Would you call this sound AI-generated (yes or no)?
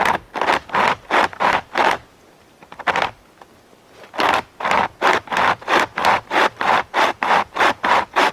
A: yes